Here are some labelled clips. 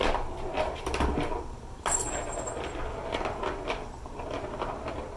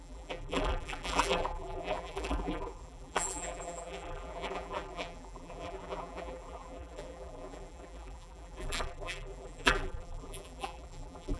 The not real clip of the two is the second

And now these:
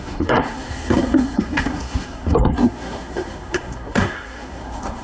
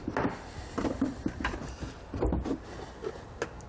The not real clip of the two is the first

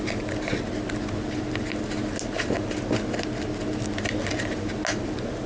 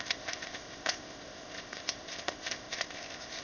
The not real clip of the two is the second